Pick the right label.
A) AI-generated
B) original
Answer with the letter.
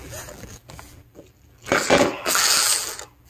A